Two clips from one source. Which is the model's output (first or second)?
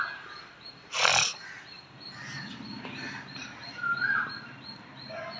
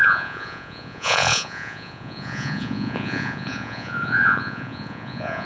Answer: second